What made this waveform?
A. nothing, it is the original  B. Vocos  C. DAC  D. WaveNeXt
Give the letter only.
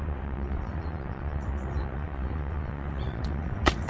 D